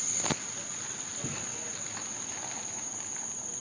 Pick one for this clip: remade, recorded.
recorded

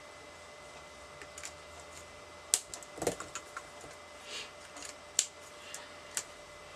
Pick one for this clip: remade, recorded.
recorded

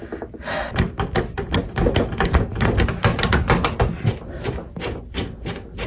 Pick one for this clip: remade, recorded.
recorded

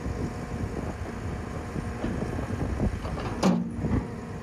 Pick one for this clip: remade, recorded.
recorded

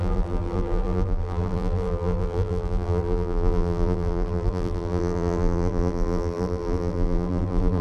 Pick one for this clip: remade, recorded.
remade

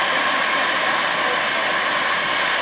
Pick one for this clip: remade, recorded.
recorded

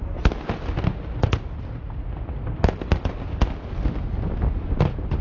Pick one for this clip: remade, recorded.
recorded